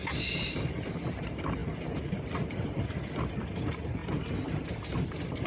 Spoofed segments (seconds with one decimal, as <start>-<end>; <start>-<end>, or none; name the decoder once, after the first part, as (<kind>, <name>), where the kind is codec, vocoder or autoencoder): none